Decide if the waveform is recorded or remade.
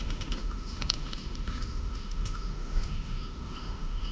remade